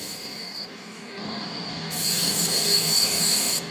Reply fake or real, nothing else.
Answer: fake